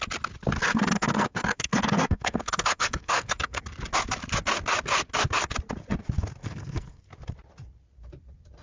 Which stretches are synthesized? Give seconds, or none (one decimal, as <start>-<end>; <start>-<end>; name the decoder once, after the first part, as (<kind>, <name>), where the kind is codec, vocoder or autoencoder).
0.7-3.6 (codec, SNAC); 6.4-7.0